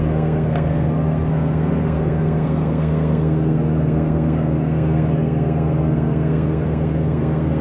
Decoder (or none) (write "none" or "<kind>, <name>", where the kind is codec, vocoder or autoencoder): codec, SNAC